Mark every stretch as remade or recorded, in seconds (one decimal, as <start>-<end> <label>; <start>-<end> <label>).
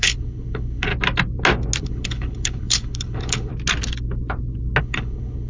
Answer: 0.0-0.9 remade; 0.9-1.8 recorded; 1.8-3.5 remade; 3.5-4.8 recorded; 4.8-5.5 remade